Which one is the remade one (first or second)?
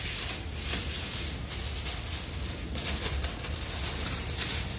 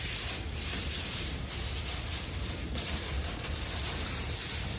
second